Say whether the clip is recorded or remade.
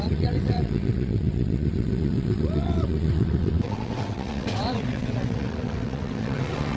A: remade